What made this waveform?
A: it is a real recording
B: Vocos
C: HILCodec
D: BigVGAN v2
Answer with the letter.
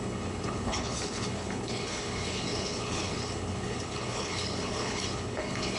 C